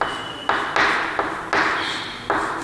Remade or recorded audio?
recorded